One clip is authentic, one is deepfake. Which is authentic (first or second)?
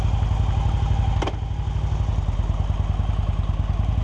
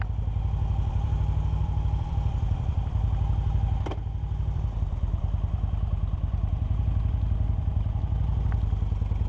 first